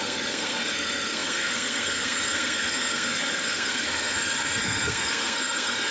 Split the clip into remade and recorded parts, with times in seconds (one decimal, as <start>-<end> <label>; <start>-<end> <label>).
0.0-5.9 remade